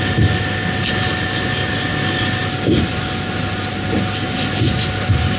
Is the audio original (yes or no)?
yes